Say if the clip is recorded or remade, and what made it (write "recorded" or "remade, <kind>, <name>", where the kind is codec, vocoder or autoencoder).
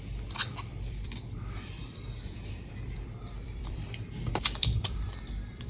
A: remade, vocoder, BigVGAN v2